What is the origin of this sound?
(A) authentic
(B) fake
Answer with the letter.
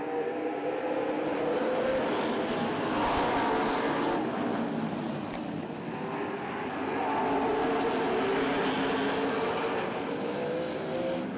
A